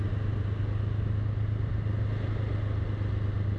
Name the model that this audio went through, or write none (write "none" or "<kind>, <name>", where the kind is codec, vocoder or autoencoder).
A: none